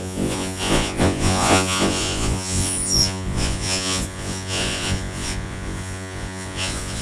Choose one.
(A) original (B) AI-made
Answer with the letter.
B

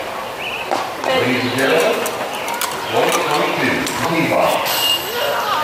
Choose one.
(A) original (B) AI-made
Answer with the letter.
A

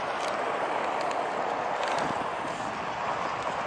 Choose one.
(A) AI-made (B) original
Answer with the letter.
B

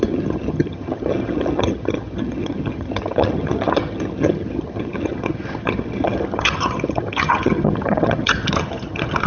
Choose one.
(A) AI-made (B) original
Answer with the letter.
A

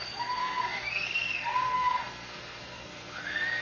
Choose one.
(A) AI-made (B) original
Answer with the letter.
A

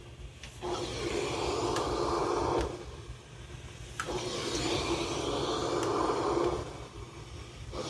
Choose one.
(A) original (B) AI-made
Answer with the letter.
A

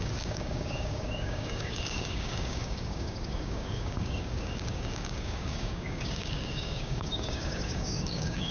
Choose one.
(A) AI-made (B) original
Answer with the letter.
A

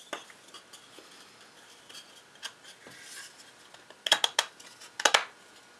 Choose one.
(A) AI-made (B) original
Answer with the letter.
B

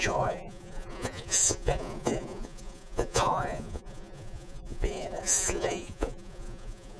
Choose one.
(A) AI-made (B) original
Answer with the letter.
A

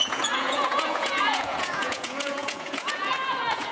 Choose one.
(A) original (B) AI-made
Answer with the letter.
B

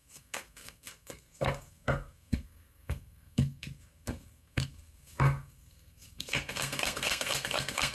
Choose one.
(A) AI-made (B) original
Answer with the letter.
A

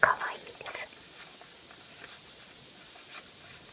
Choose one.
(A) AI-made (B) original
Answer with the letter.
B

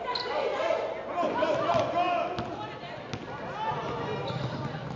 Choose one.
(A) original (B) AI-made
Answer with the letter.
A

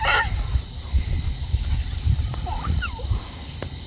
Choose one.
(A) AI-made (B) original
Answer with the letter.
B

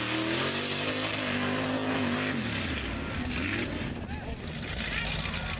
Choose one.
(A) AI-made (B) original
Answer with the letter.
B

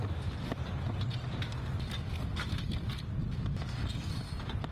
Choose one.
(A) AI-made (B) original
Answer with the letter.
B